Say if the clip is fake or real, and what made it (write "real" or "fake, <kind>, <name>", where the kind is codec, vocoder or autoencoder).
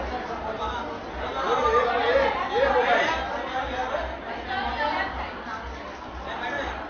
real